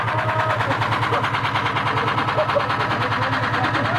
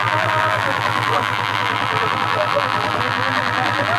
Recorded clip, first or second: first